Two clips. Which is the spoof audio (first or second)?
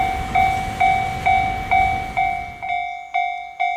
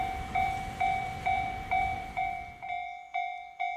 second